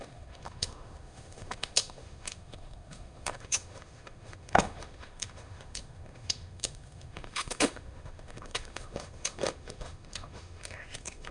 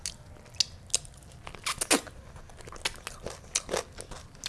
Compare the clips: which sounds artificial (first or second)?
first